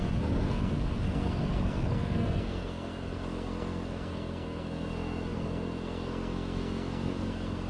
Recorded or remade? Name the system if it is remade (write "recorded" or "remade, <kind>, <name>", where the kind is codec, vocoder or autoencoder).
remade, codec, SNAC